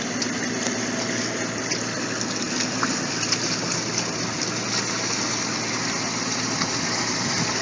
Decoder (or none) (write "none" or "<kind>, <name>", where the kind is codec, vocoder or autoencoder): none